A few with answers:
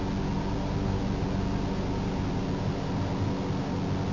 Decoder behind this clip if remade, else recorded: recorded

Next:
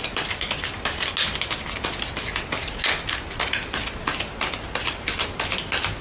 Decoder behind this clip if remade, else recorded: recorded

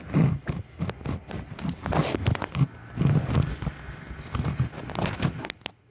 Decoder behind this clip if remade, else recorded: recorded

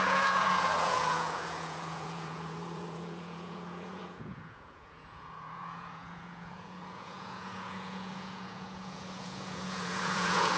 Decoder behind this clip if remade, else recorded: remade, vocoder, Vocos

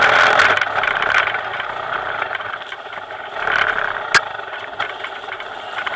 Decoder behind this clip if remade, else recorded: recorded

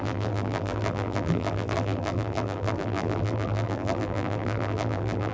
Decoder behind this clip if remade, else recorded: remade, vocoder, BigVGAN v2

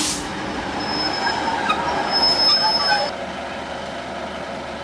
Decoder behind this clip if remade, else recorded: recorded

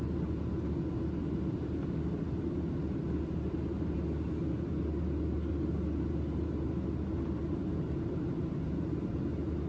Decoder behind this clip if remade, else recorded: recorded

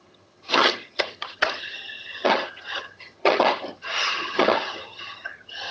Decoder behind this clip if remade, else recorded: remade, vocoder, HiFi-GAN